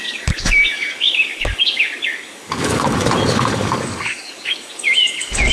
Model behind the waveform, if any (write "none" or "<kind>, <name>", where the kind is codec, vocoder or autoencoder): codec, DAC